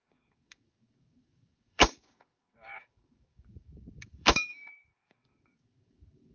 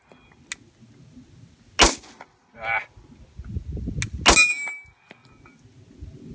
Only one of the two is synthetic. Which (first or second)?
first